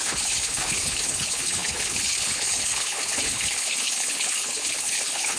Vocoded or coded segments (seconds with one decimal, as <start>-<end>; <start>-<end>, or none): 0.0-5.4